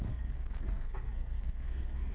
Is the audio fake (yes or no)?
yes